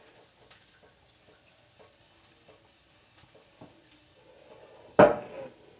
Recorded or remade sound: recorded